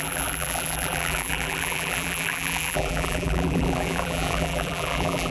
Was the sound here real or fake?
fake